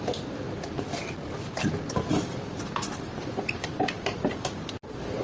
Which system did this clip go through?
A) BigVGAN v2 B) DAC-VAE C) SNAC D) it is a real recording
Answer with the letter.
D